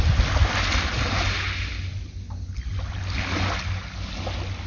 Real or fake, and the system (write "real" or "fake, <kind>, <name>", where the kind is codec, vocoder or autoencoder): real